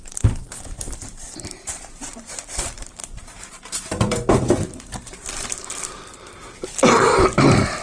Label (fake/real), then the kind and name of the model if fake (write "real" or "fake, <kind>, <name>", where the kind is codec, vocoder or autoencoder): fake, vocoder, BigVGAN v2